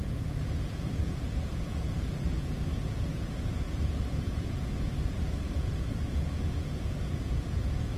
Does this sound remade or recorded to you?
remade